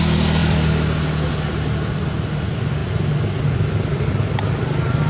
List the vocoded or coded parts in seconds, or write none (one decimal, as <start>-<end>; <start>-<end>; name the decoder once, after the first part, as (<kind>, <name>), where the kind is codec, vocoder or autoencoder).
none